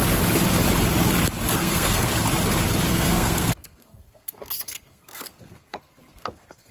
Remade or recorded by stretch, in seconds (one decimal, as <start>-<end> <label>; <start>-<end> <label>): 0.0-1.5 recorded; 1.5-2.1 remade; 2.1-2.9 recorded; 2.9-6.7 remade